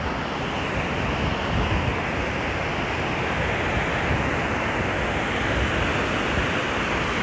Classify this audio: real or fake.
real